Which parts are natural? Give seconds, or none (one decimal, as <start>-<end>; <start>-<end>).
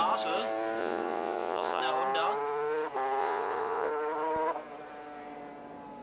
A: 0.0-0.8; 1.8-3.2; 3.9-6.0